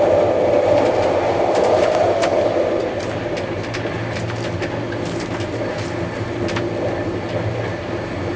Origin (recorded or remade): recorded